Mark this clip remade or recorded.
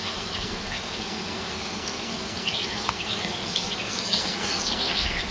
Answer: remade